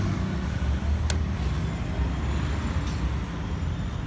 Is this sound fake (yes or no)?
no